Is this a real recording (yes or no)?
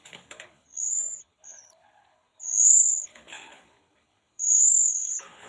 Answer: no